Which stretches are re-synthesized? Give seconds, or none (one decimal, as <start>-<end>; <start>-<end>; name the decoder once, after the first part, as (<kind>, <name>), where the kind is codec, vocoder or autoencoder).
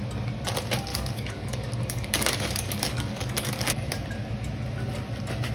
0.9-3.9 (codec, DAC)